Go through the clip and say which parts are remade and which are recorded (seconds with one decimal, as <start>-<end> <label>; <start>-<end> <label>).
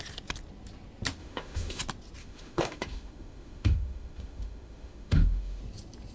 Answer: 0.0-1.2 recorded; 1.2-1.8 remade; 1.8-2.2 recorded; 2.2-5.6 remade; 5.6-6.1 recorded